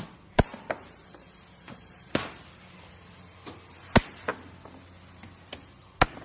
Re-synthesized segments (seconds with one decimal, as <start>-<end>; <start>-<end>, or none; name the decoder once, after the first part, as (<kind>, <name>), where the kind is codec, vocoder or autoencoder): none